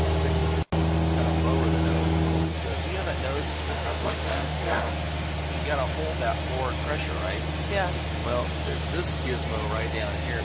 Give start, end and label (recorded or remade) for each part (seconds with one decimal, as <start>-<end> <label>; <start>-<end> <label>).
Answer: 0.0-3.5 recorded; 3.5-4.9 remade; 4.9-10.4 recorded